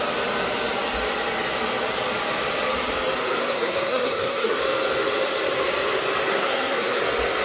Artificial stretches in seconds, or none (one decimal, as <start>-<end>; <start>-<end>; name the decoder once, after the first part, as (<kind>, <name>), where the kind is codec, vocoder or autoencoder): 3.4-4.6 (codec, SNAC); 6.3-7.0